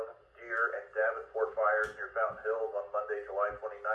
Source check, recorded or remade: recorded